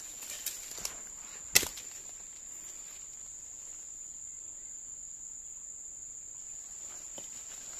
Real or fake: real